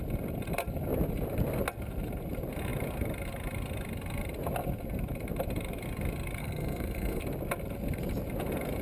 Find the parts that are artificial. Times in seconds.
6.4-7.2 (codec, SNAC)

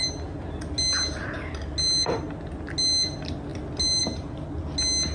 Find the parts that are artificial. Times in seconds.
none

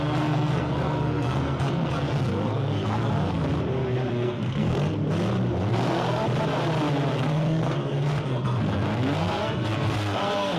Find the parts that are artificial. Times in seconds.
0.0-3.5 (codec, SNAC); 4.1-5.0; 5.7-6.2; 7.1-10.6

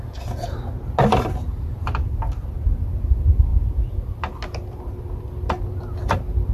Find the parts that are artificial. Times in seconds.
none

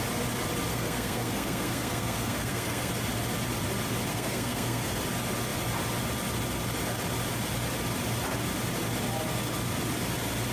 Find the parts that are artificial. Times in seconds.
0.7-2.9 (codec, SNAC); 4.1-5.0